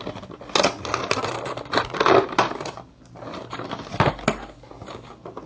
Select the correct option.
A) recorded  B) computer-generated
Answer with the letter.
A